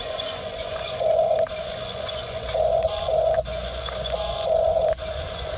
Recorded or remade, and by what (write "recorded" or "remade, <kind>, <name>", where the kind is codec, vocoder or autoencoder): remade, vocoder, Vocos